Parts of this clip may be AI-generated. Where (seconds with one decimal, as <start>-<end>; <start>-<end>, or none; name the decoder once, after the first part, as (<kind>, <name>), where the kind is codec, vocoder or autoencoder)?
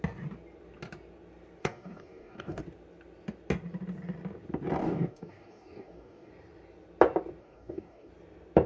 1.6-2.6 (codec, DAC); 4.8-6.3; 7.4-8.1